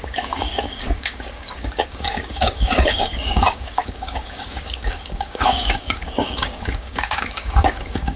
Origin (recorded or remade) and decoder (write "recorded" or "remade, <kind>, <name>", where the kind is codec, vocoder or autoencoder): remade, codec, DAC